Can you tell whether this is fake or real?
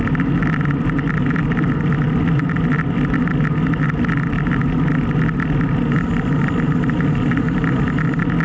real